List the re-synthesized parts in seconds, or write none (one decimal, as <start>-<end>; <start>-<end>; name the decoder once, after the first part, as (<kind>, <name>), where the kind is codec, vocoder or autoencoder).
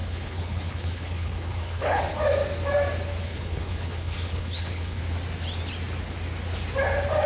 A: 0.0-2.0 (codec, HILCodec); 3.2-5.0